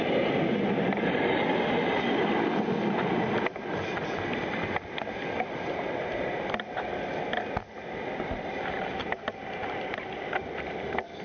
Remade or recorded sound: recorded